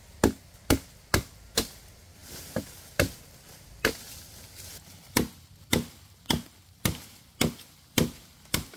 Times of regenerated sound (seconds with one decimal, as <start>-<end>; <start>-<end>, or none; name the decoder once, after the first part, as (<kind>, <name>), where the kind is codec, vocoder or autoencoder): 2.2-5.6 (vocoder, BigVGAN v2)